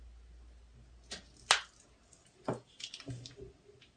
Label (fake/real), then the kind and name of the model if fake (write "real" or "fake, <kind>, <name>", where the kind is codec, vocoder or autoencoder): real